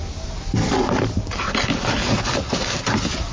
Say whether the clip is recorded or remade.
recorded